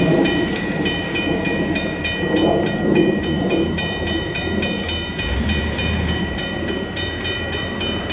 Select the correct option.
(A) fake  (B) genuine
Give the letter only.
A